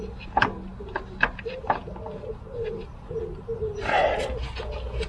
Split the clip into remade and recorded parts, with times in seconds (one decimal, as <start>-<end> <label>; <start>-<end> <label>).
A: 0.0-5.1 recorded

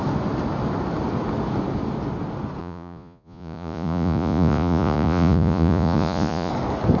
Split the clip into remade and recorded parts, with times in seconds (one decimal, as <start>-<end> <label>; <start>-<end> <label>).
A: 0.0-2.6 recorded; 2.6-6.5 remade; 6.5-7.0 recorded